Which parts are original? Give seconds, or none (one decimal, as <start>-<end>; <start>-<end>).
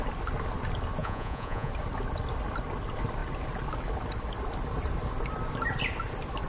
0.0-1.0; 1.7-6.5